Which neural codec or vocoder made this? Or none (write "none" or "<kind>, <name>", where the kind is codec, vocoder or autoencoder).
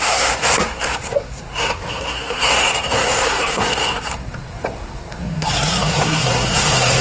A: codec, SNAC